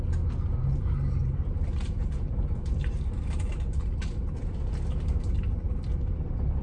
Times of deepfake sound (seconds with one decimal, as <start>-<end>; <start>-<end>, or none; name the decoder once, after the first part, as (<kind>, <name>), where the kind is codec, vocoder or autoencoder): 0.0-0.6 (vocoder, BigVGAN v2); 1.2-6.6